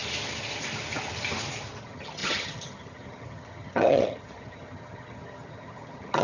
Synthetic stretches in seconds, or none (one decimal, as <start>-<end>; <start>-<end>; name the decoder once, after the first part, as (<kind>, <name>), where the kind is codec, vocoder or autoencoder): 1.8-6.2 (vocoder, HiFi-GAN)